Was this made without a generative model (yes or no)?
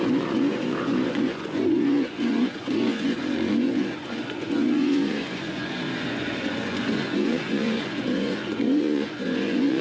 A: no